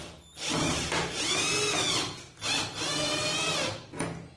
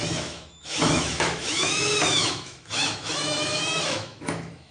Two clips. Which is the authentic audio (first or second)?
first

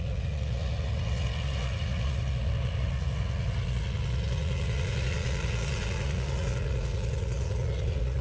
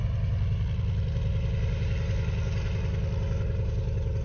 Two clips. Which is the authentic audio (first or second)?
second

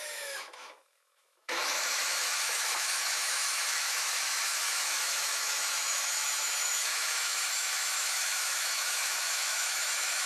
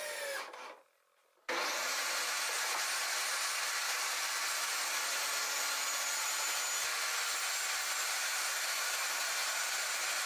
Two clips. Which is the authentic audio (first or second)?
second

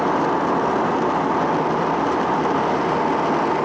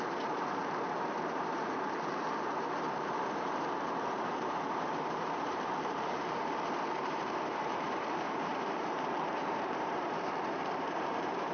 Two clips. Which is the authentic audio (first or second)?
first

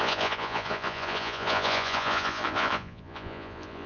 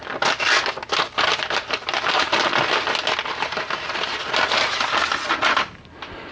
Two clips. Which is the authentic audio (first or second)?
second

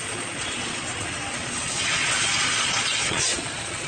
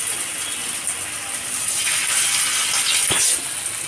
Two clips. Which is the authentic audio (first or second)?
second